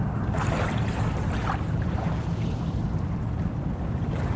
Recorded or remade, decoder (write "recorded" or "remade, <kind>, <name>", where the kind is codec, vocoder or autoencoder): recorded